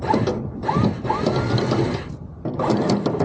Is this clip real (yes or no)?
yes